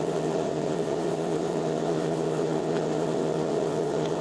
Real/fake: fake